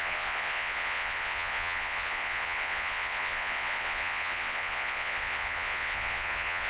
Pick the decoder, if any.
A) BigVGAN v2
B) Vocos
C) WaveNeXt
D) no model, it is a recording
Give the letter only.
B